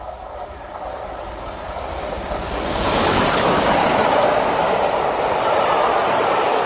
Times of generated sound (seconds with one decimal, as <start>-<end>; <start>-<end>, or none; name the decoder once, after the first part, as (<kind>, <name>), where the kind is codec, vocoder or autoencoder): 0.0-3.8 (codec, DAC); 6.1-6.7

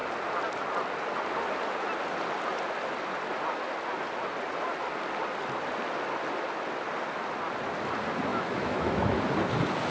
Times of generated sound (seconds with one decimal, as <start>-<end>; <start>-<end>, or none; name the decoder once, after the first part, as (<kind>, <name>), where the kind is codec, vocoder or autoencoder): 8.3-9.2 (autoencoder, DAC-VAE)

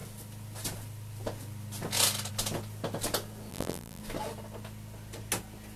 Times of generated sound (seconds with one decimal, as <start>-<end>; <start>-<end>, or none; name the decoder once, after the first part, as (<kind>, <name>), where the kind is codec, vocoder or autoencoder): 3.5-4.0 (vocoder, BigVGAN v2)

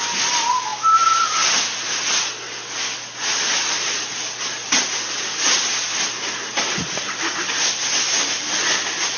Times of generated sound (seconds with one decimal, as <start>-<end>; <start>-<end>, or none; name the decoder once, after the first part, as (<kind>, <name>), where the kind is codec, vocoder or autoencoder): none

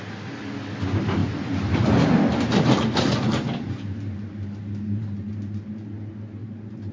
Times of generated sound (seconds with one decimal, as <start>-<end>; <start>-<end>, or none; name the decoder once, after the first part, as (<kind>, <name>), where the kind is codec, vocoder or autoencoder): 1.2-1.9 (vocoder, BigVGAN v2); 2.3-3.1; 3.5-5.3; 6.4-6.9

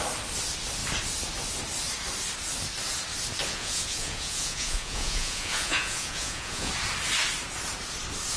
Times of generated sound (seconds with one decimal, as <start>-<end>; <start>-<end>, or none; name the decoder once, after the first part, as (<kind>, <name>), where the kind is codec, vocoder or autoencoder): 3.4-6.7 (vocoder, Vocos)